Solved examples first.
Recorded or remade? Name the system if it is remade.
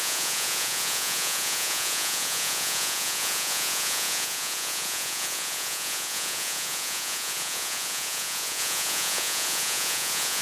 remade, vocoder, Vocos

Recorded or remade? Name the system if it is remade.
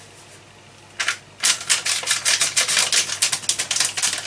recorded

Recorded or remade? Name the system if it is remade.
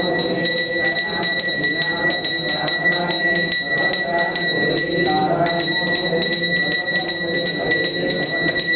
recorded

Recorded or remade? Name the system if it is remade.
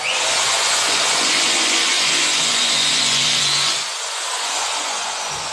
remade, vocoder, Vocos